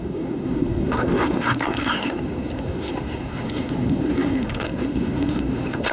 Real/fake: fake